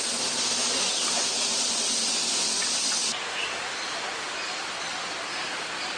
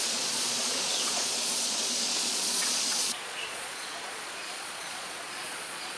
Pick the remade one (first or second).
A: second